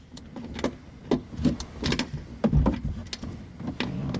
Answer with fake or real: real